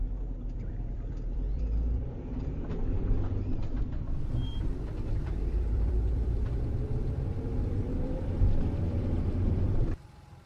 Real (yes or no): no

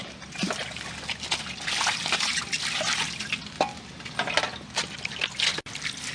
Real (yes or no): yes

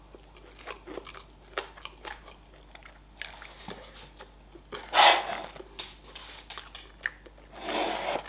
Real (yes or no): yes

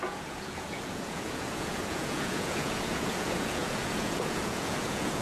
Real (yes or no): no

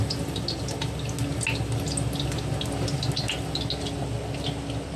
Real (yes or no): yes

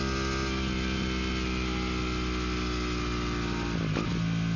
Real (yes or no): yes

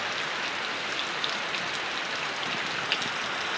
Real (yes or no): yes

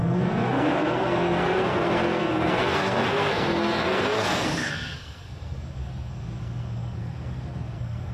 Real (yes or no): no